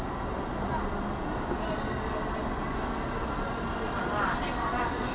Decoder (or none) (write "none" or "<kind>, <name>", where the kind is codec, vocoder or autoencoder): none